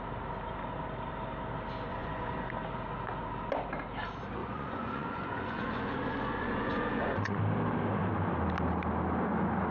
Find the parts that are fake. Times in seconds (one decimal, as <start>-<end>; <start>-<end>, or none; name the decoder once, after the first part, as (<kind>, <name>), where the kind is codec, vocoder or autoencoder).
1.9-2.5 (vocoder, Vocos); 4.4-7.4